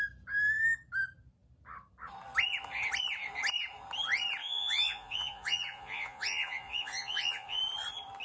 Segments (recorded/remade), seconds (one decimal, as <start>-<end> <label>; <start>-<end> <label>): 0.0-4.4 recorded; 4.4-7.6 remade; 7.6-8.2 recorded